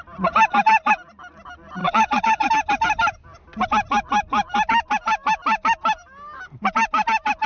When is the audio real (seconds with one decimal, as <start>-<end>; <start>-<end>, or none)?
0.0-1.8; 2.5-7.5